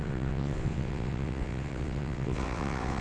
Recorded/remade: remade